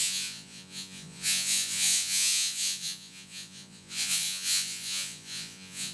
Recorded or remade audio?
remade